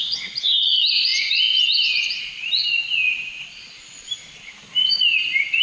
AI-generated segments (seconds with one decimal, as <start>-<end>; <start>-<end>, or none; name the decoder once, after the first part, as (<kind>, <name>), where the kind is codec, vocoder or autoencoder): none